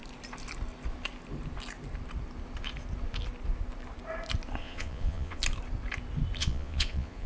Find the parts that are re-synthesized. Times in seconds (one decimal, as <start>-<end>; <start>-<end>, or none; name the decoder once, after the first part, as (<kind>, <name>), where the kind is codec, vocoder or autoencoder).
4.6-5.4 (vocoder, Vocos); 6.4-7.3